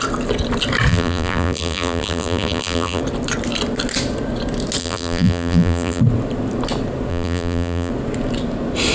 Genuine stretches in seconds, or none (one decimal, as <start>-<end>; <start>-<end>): 0.0-0.9; 3.0-4.8; 6.0-7.1; 7.9-8.9